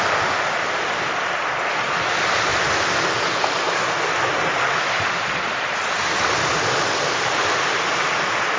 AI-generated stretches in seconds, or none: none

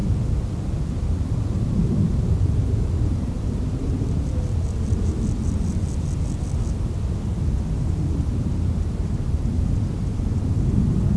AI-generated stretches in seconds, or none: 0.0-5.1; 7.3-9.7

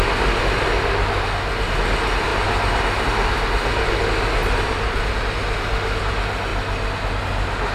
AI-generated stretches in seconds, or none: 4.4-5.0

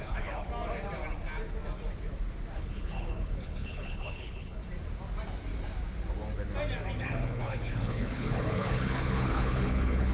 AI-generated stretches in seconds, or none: 0.0-0.5; 2.6-4.6; 7.0-10.1

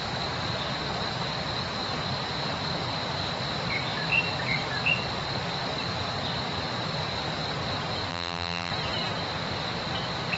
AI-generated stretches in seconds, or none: 8.1-8.7